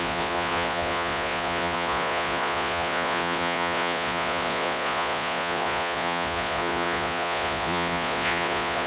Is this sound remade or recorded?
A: remade